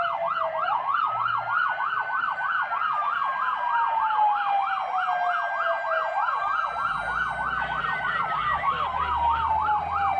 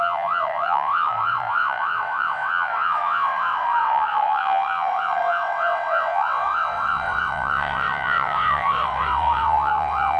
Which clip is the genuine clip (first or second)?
first